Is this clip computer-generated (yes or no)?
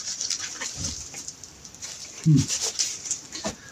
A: yes